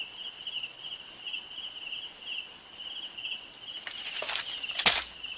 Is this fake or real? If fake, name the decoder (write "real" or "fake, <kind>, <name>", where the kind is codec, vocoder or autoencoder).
real